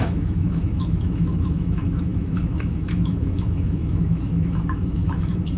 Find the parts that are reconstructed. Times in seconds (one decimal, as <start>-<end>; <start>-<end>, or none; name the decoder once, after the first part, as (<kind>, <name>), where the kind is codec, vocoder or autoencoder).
0.0-5.6 (autoencoder, DAC-VAE)